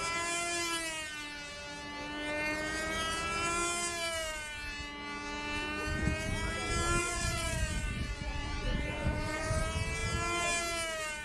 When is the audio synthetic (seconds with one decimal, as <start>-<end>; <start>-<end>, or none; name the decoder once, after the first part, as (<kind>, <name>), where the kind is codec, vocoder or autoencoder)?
7.0-9.6 (vocoder, Vocos)